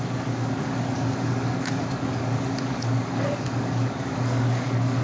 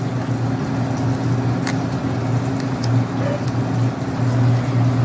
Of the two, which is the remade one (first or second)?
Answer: first